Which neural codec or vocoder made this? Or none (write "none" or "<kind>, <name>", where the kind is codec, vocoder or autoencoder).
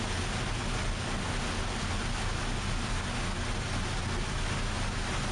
none